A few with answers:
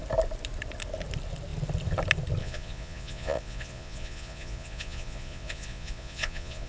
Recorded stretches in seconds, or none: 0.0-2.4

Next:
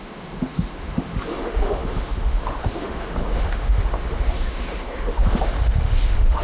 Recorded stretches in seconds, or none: none

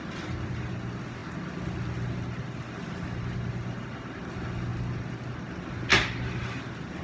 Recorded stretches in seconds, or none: 0.0-7.0

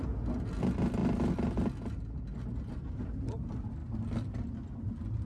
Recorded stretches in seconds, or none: 0.0-5.3